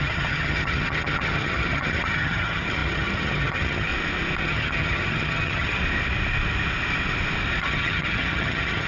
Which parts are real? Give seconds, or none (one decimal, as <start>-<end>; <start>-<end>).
3.9-4.4; 5.8-7.6